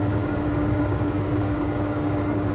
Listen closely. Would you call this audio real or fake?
fake